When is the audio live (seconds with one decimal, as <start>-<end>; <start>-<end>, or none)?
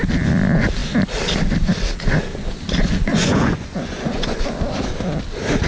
0.0-3.1; 4.4-5.7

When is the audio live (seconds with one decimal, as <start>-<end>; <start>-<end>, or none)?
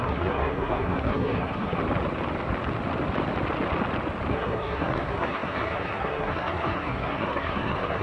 1.8-4.3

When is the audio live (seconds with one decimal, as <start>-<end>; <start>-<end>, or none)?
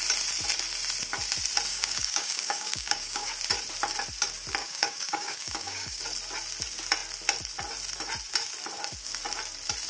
0.0-1.7; 3.3-4.6; 6.0-9.9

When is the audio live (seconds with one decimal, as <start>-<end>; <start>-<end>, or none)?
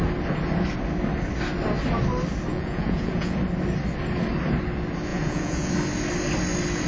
0.0-2.5; 3.4-5.1; 5.7-6.9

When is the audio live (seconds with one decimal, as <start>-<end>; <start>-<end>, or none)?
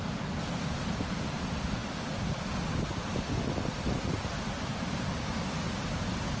0.0-6.4